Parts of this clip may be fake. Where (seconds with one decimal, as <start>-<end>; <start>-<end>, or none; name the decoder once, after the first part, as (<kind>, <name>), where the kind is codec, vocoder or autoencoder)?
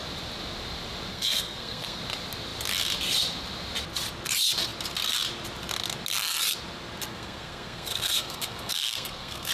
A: 1.1-2.0 (codec, SNAC); 7.1-9.5